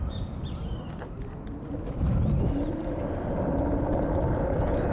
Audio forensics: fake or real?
fake